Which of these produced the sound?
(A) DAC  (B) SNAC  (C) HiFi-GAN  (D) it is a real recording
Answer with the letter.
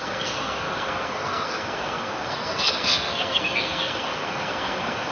B